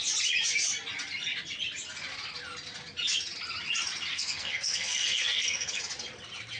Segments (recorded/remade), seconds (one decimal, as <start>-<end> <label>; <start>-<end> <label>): 0.0-4.1 recorded; 4.1-5.8 remade; 5.8-6.6 recorded